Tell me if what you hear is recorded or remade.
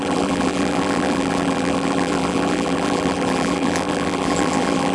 remade